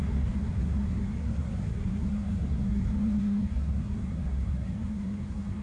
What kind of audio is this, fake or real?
fake